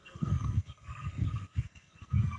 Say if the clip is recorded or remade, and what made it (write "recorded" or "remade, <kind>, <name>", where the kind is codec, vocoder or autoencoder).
remade, codec, SNAC